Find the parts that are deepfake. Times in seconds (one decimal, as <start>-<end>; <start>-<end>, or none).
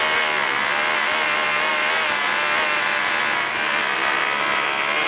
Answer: none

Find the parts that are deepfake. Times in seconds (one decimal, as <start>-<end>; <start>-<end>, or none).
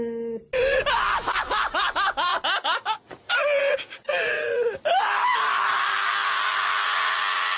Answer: none